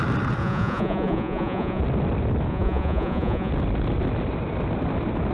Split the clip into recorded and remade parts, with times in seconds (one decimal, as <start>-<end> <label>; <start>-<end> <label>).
0.0-0.4 recorded; 0.4-1.8 remade; 1.8-2.5 recorded; 2.5-3.5 remade; 3.5-5.3 recorded